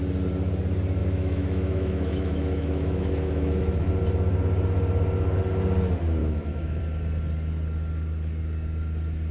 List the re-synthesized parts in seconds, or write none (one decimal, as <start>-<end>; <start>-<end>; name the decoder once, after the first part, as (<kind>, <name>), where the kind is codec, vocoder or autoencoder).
1.0-3.9 (autoencoder, DAC-VAE); 6.2-6.8